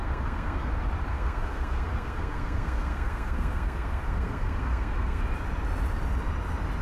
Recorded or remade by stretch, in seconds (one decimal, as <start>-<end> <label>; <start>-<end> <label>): 0.0-0.7 remade; 0.7-1.1 recorded; 1.1-5.2 remade; 5.2-6.8 recorded